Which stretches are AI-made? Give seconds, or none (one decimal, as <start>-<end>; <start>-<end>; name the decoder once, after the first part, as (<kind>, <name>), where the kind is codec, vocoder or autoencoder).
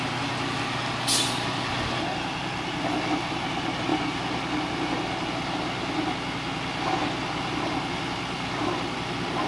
none